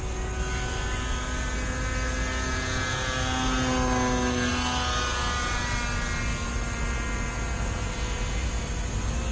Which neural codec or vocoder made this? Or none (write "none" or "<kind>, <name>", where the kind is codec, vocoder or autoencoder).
none